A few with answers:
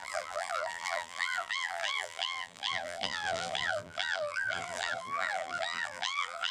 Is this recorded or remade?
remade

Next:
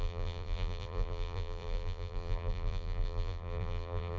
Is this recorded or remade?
remade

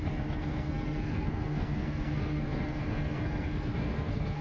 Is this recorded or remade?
remade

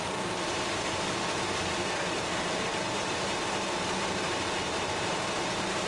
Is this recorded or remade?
remade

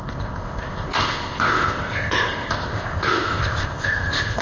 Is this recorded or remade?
remade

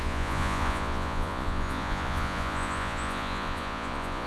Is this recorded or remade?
remade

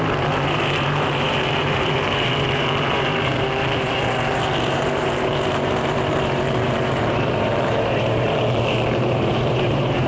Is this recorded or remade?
remade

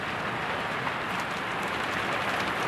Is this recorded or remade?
recorded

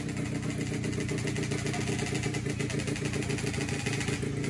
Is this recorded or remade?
recorded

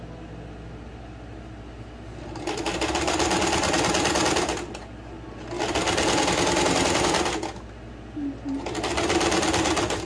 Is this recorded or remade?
recorded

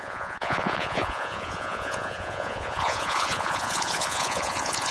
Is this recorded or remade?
remade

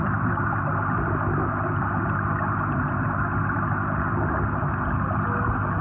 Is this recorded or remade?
recorded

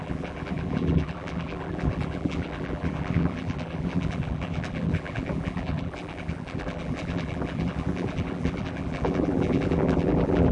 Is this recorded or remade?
remade